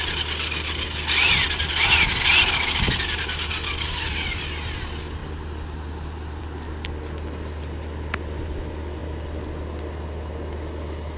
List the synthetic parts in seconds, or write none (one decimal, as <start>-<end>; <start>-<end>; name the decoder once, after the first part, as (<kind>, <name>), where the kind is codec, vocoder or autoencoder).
none